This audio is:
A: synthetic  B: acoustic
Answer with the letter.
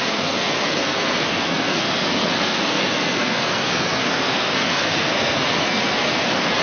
A